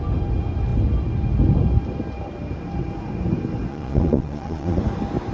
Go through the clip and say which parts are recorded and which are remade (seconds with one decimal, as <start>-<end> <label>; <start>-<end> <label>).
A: 0.0-3.7 recorded; 3.7-4.8 remade; 4.8-5.3 recorded